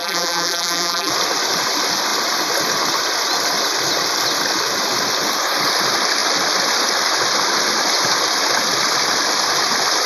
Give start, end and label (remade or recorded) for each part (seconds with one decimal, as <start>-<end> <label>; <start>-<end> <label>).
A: 0.0-1.1 remade; 1.1-10.1 recorded